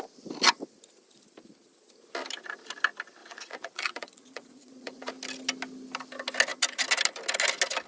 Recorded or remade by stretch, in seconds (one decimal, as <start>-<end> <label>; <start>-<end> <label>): 0.0-3.2 recorded; 3.2-5.1 remade; 5.1-7.9 recorded